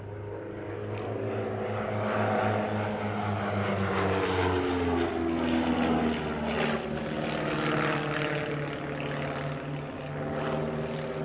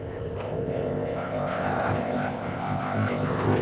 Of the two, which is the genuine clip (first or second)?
first